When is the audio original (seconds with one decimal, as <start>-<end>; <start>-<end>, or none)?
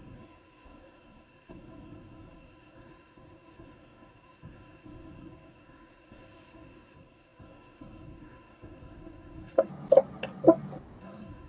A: 9.7-11.0